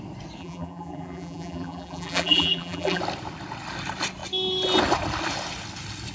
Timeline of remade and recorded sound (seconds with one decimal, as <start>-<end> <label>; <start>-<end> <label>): 0.0-0.4 recorded; 0.4-3.0 remade; 3.0-6.1 recorded